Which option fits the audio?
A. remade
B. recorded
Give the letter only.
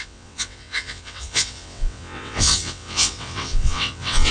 A